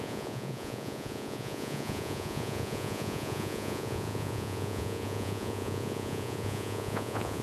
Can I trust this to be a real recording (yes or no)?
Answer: no